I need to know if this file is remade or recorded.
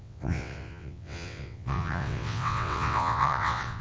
remade